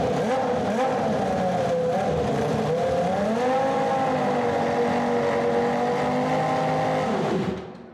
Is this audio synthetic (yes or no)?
no